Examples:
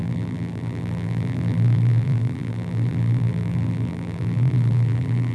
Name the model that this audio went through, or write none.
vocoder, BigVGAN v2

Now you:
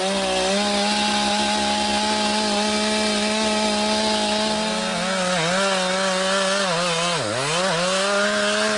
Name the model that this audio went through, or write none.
none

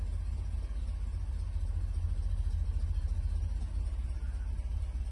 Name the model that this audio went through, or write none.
none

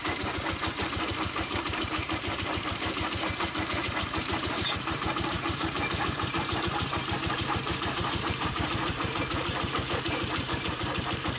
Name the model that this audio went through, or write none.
vocoder, BigVGAN v2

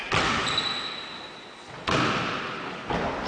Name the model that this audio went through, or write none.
vocoder, BigVGAN v2